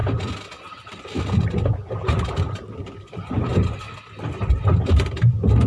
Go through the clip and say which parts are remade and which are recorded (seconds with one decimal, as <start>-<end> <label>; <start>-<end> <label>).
0.0-5.7 recorded